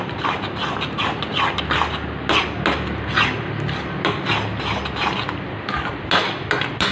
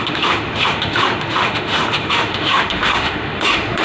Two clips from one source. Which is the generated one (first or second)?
second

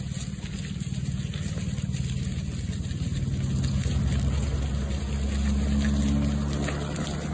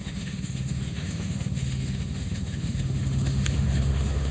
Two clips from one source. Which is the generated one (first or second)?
second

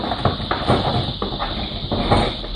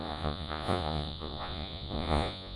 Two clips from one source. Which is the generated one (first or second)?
second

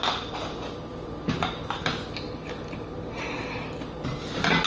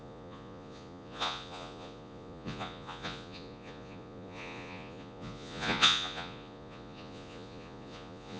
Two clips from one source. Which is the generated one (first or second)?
second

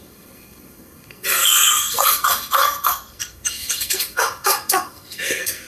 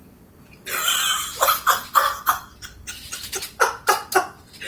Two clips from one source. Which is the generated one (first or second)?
first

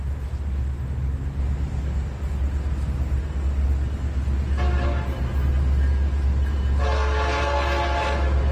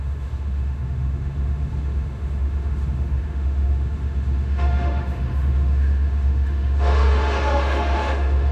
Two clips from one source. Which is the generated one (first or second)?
second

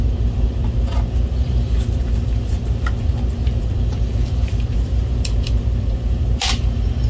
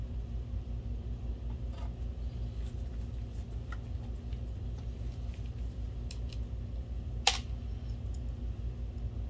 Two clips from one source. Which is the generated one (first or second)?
first